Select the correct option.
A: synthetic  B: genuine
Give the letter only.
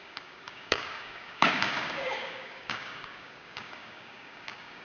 A